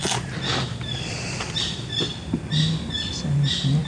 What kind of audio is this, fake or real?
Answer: fake